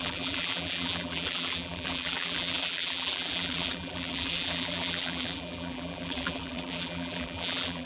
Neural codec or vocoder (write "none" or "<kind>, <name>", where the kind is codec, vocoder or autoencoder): vocoder, BigVGAN v2